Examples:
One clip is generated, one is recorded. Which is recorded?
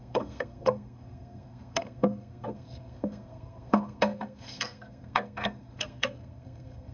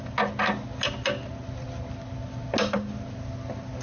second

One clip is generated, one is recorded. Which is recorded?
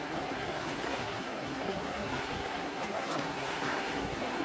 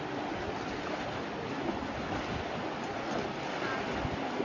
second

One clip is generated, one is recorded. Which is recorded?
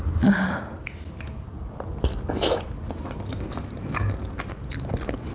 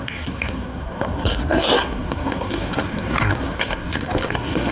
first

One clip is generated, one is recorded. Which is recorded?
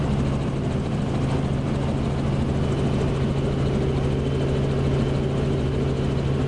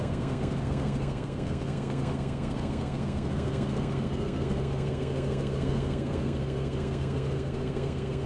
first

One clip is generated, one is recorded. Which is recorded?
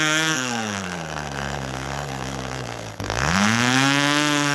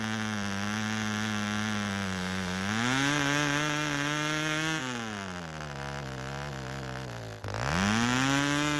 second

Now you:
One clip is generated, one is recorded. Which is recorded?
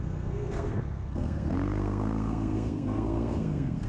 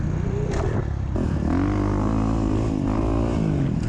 second